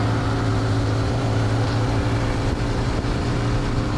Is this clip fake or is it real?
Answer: fake